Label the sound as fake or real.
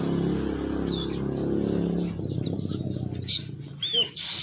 real